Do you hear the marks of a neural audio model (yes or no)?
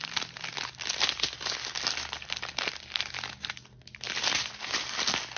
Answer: no